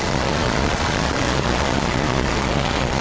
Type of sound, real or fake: fake